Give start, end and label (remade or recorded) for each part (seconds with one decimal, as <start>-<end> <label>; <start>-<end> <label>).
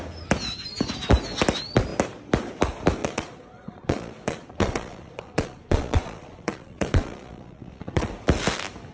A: 0.0-3.0 recorded; 3.0-8.1 remade; 8.1-8.9 recorded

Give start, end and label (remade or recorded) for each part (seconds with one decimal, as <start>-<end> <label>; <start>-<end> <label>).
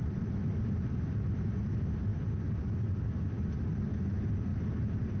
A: 0.0-5.2 recorded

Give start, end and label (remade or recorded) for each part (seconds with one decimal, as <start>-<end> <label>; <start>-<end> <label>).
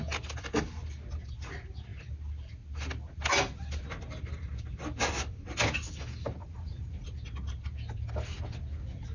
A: 0.0-6.4 recorded; 6.4-6.9 remade; 6.9-9.1 recorded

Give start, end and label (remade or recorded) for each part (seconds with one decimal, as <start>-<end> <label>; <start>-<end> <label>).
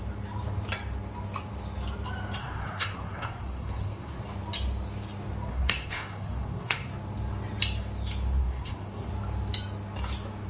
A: 0.0-2.4 recorded; 2.4-4.2 remade; 4.2-5.5 recorded; 5.5-6.9 remade; 6.9-8.4 recorded; 8.4-9.1 remade; 9.1-10.5 recorded